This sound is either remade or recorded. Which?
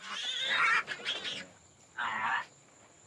recorded